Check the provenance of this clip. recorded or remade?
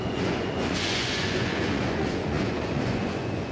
remade